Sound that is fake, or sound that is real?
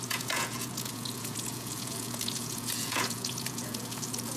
fake